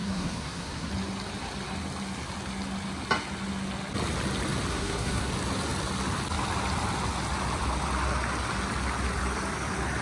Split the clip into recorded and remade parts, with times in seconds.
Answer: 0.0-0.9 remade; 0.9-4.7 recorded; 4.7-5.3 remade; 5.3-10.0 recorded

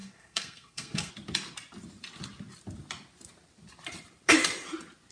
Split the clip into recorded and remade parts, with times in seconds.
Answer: 0.0-1.1 remade; 1.1-5.1 recorded

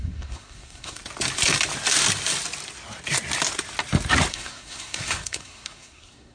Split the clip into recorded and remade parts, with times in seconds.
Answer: 0.0-1.0 remade; 1.0-4.3 recorded; 4.3-6.3 remade

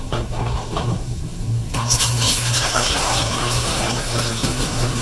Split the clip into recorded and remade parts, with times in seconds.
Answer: 0.0-5.0 remade